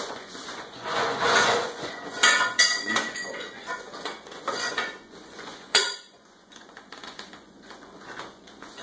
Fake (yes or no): yes